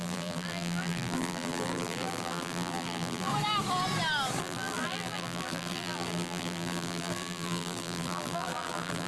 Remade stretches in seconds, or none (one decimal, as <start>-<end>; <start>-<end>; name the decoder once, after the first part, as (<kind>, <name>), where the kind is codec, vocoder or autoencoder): 0.0-3.3 (vocoder, BigVGAN v2); 4.4-9.1